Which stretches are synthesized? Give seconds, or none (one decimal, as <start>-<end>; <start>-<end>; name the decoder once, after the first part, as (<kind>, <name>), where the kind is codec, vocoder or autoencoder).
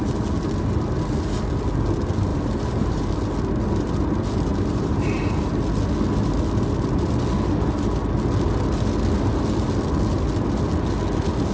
2.3-3.1 (vocoder, BigVGAN v2); 4.5-5.4